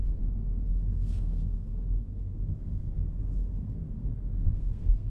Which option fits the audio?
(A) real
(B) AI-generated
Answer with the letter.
B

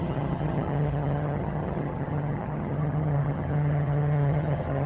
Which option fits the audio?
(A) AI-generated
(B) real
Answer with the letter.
A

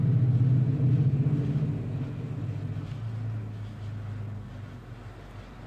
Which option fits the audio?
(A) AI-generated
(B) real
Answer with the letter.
B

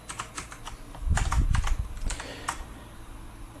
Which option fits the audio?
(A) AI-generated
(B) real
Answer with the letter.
B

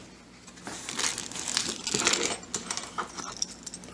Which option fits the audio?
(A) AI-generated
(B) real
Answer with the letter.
B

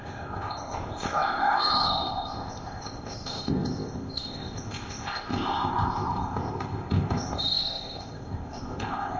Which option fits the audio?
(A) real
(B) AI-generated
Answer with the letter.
B